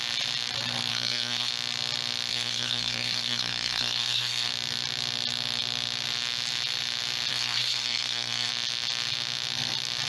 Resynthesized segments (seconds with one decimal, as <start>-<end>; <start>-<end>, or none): 0.9-1.5; 2.3-4.5; 7.3-8.5